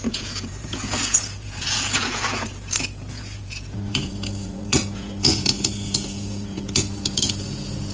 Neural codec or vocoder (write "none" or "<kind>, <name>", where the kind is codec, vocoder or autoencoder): vocoder, Vocos